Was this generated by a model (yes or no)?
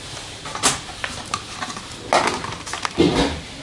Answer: no